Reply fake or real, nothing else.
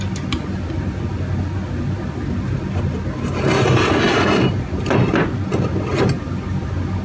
real